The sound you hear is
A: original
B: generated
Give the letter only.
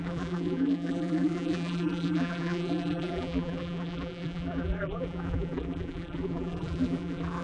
B